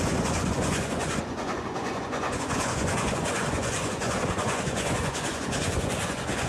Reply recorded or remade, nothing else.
remade